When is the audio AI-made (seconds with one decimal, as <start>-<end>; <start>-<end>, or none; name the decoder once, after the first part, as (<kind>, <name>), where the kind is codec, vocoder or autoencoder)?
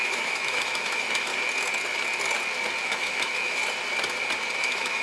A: 0.0-1.3 (autoencoder, DAC-VAE); 2.8-3.6; 4.6-5.0